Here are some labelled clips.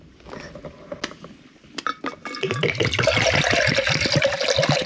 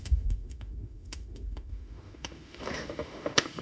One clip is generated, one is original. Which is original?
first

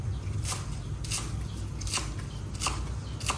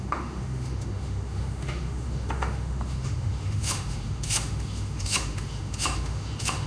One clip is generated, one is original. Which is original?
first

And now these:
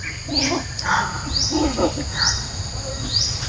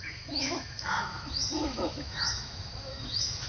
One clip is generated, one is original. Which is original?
first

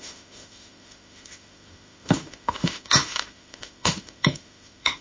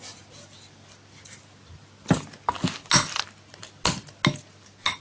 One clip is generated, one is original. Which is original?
second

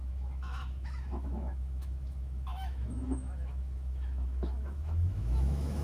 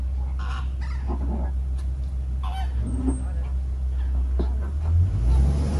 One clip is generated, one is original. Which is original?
second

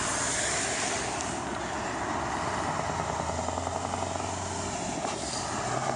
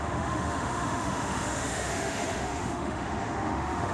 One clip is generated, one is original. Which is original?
first